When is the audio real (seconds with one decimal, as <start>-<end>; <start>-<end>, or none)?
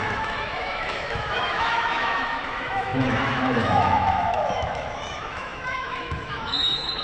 none